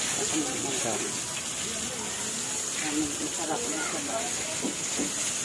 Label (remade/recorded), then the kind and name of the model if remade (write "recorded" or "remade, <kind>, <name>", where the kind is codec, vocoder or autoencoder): recorded